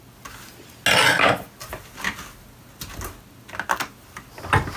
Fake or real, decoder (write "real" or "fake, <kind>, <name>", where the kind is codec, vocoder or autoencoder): real